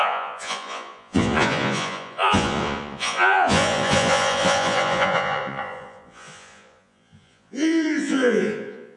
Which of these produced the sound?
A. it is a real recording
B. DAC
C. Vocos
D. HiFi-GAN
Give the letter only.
C